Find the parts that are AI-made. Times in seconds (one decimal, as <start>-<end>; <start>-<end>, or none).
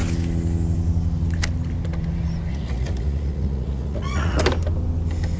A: 2.5-4.4